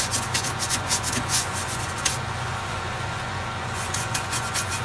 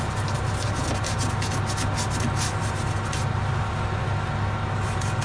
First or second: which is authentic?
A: second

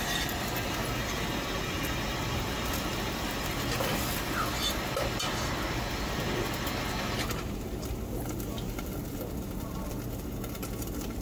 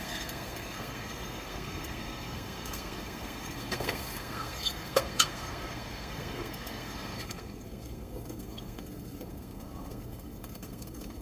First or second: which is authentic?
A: first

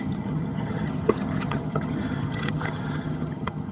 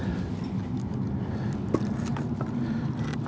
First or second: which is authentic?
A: second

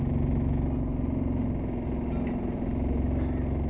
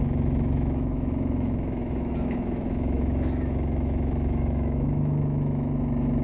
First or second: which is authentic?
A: first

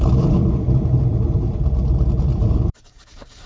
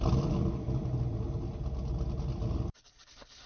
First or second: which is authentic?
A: second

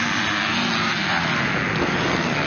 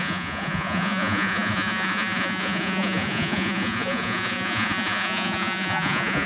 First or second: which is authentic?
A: first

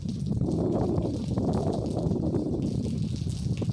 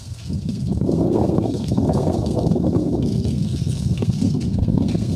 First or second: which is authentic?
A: first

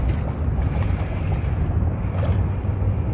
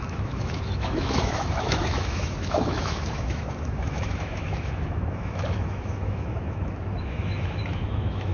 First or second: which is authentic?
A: first